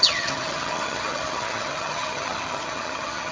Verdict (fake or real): fake